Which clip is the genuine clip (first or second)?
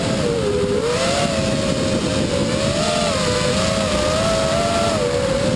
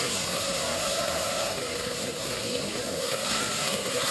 first